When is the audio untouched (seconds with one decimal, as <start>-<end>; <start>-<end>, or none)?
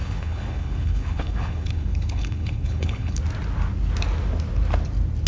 3.2-5.3